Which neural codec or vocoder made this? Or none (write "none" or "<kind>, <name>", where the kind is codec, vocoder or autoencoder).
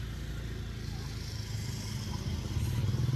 none